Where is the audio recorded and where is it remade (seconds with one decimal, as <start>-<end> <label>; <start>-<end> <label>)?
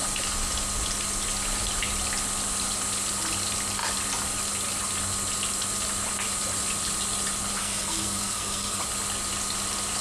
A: 0.0-7.6 recorded; 7.6-8.8 remade; 8.8-10.0 recorded